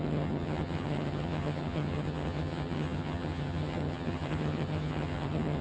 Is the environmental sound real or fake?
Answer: fake